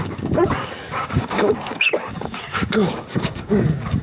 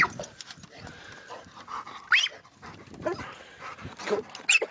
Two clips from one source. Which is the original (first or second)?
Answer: second